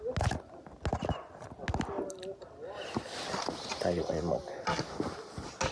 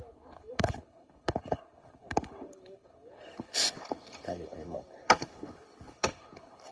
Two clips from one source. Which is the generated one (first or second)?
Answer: second